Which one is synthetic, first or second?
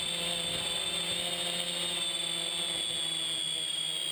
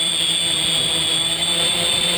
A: second